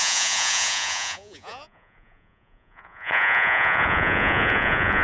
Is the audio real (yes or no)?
no